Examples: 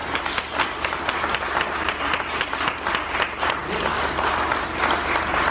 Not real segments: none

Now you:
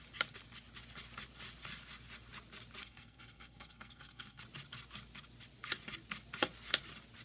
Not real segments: 2.8-4.4 (codec, SNAC)

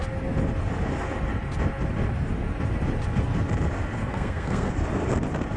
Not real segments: 4.0-4.7 (codec, SNAC)

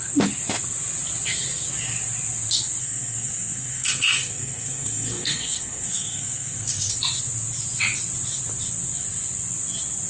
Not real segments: 2.8-6.9 (codec, SNAC)

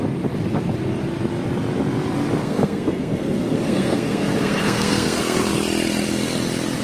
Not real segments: 2.4-5.5 (codec, SNAC)